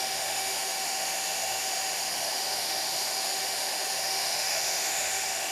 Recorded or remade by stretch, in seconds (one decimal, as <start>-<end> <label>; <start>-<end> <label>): 0.0-5.5 remade